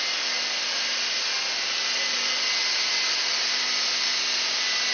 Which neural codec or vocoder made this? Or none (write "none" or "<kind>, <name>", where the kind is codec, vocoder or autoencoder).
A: none